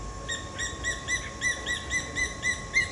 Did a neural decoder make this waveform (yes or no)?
no